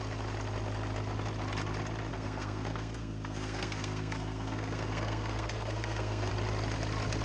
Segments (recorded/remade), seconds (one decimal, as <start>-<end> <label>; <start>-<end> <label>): 0.0-2.1 recorded; 2.1-6.3 remade; 6.3-7.2 recorded